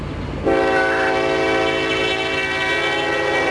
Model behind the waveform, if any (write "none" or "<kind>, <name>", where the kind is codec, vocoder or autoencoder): none